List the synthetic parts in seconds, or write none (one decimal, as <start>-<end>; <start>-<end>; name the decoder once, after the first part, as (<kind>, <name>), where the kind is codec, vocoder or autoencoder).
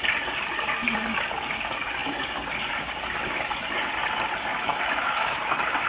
4.5-5.3 (autoencoder, DAC-VAE)